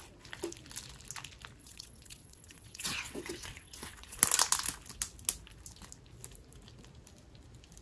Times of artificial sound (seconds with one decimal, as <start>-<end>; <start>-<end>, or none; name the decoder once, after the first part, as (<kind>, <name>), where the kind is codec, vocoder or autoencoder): 1.6-4.2 (vocoder, WaveNeXt)